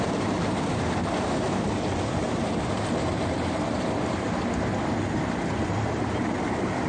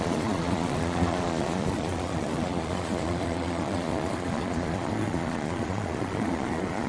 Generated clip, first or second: second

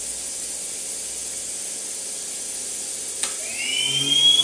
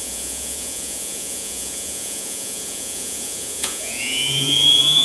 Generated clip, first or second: second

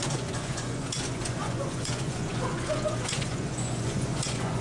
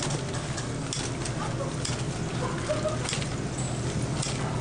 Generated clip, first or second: first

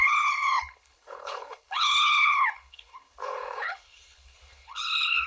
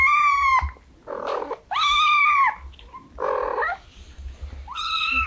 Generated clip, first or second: first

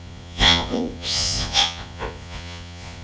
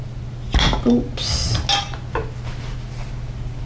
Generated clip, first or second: first